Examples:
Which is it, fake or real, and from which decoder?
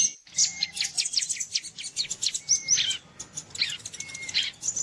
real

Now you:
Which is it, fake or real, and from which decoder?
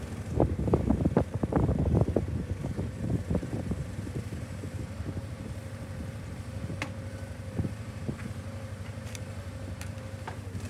fake, vocoder, BigVGAN v2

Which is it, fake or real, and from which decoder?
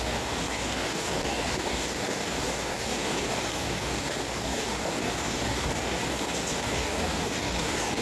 fake, codec, DAC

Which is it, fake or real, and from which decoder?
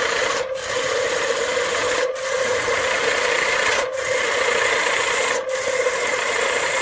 real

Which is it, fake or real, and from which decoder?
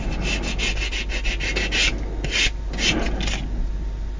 real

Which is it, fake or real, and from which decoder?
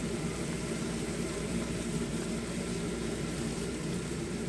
fake, vocoder, BigVGAN v2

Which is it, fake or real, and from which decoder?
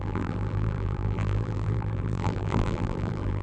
fake, vocoder, BigVGAN v2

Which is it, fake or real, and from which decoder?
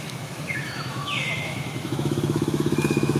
fake, autoencoder, DAC-VAE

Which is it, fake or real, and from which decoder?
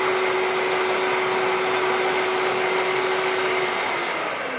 real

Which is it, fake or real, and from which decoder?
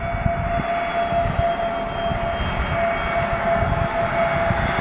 real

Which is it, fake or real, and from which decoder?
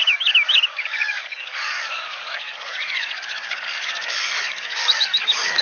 fake, codec, DAC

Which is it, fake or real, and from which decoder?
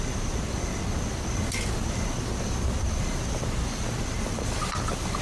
fake, vocoder, BigVGAN v2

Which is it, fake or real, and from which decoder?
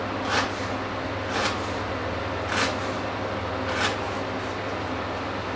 real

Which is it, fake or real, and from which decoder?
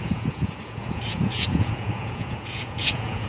fake, vocoder, Vocos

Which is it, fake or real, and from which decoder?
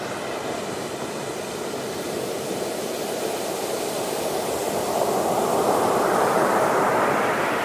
real